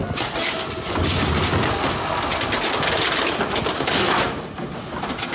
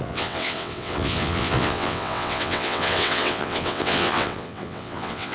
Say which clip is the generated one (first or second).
second